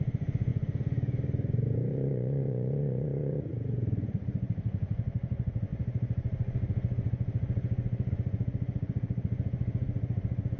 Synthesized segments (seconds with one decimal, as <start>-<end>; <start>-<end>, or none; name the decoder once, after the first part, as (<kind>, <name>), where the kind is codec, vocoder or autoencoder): 0.0-10.6 (vocoder, Vocos)